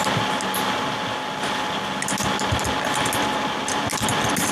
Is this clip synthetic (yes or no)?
no